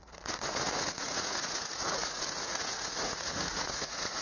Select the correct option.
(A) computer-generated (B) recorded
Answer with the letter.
A